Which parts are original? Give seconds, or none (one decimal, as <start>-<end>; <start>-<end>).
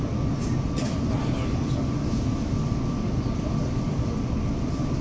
0.0-5.0